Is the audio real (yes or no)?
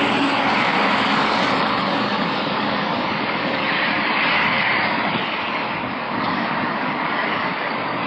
no